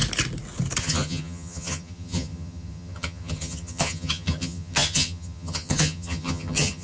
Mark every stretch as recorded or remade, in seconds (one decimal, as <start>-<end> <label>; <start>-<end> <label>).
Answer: 0.0-0.8 recorded; 0.8-6.8 remade